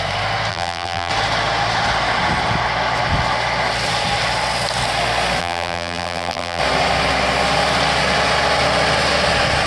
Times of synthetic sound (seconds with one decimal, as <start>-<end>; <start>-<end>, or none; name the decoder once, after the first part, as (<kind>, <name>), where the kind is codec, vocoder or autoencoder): 0.5-1.1 (vocoder, BigVGAN v2); 5.4-6.6